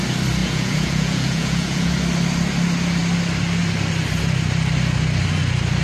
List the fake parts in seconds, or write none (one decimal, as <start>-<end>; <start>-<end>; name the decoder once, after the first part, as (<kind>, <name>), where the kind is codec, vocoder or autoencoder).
0.4-1.9 (vocoder, Vocos)